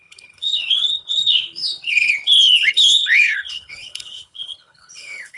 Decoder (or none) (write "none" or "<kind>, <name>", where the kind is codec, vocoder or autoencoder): codec, HILCodec